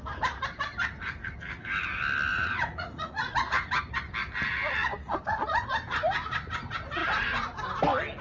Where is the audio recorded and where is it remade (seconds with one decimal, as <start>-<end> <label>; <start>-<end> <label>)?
0.0-2.3 recorded; 2.3-3.8 remade; 3.8-8.2 recorded